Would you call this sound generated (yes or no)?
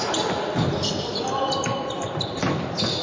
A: no